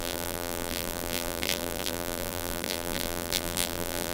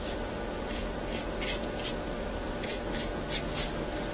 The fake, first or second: first